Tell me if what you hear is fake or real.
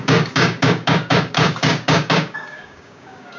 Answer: fake